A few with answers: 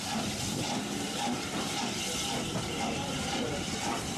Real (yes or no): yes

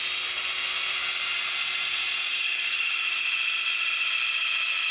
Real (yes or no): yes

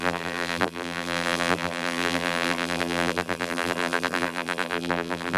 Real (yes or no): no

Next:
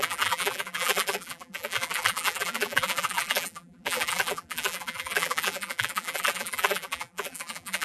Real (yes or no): no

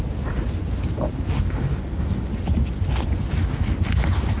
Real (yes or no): yes